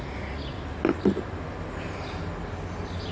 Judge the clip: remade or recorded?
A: recorded